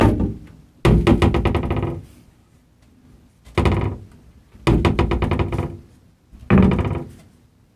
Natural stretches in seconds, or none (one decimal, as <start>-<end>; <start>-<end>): 0.6-7.8